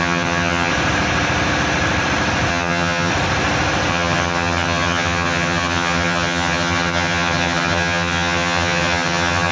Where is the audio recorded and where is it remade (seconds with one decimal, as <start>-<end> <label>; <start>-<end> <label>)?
0.0-0.7 remade; 0.7-2.5 recorded; 2.5-3.1 remade; 3.1-3.9 recorded; 3.9-9.5 remade